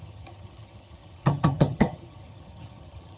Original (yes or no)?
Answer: no